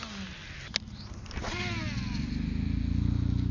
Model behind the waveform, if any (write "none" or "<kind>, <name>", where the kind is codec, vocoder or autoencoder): none